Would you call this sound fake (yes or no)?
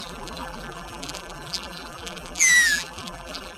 yes